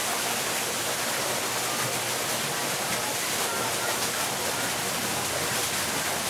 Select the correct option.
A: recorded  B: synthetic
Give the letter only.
A